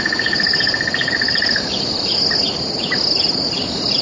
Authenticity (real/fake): real